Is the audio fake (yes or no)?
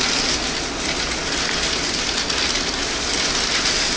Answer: no